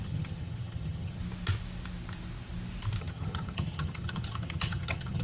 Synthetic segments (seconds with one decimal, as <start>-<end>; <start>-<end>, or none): 0.0-1.2; 3.0-5.2

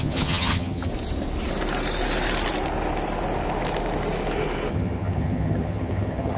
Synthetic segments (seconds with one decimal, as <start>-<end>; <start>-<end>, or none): 0.0-0.9; 4.7-6.4

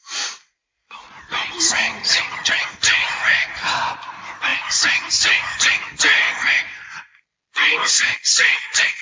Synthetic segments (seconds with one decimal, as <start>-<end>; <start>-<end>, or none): 2.0-2.6

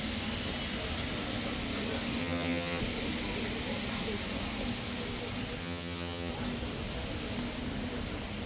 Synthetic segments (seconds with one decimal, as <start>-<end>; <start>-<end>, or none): 2.2-2.8; 5.6-6.3

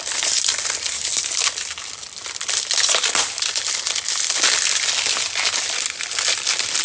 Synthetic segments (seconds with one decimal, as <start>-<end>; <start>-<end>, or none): none

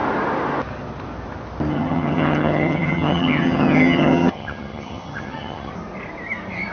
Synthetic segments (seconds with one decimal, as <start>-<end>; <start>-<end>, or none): 1.7-5.7

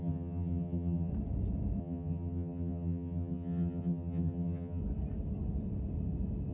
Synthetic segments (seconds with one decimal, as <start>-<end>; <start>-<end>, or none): 0.0-1.1; 1.8-4.8